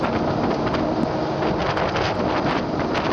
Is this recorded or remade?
recorded